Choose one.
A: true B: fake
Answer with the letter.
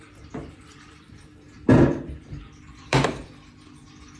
B